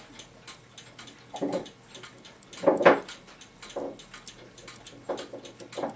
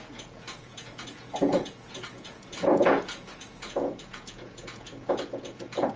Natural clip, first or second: first